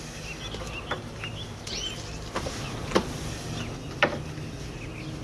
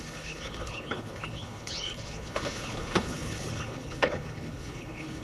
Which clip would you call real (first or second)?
first